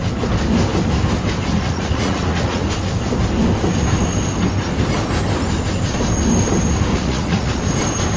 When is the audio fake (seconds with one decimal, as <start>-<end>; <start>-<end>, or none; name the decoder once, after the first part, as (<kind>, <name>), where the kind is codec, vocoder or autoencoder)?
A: 1.5-2.6 (vocoder, Vocos); 6.9-7.6